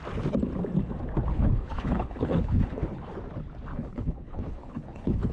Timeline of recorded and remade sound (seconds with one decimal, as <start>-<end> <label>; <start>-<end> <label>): 0.0-1.3 recorded; 1.3-3.1 remade; 3.1-3.7 recorded; 3.7-5.3 remade